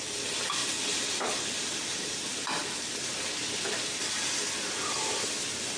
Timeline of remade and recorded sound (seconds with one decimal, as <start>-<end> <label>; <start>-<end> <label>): 0.0-5.8 recorded